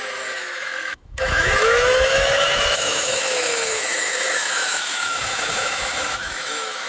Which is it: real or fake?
fake